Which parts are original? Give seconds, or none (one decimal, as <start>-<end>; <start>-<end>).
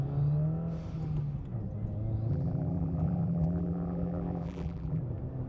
0.0-2.3; 5.0-5.5